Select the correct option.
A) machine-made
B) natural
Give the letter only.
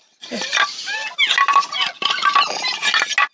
B